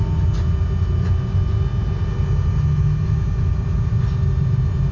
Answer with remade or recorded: recorded